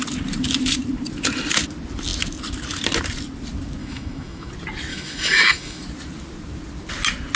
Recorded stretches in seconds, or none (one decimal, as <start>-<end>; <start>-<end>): 0.0-3.8; 4.5-4.9; 5.8-7.4

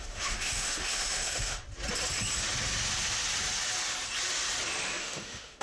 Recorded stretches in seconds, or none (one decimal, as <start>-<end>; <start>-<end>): 1.6-5.0

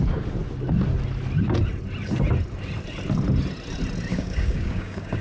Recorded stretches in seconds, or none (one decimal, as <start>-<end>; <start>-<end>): 0.0-4.1